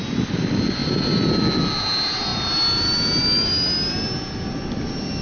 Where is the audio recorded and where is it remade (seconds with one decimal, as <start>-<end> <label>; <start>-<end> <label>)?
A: 0.0-5.2 recorded